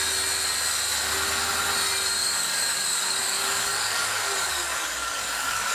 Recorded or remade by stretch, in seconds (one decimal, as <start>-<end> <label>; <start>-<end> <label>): 0.0-2.2 recorded; 2.2-5.7 remade